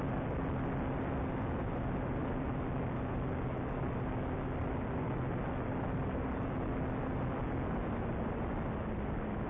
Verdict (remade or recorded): recorded